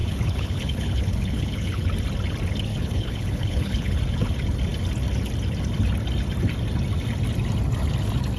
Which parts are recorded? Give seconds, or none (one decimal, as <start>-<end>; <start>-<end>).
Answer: 1.9-2.7; 4.0-8.4